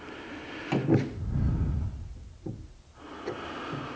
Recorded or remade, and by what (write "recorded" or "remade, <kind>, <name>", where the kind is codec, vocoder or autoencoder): recorded